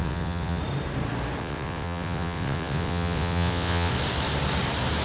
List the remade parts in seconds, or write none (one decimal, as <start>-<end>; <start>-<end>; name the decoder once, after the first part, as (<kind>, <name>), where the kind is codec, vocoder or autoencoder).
0.0-0.6 (vocoder, WaveNeXt); 1.4-3.9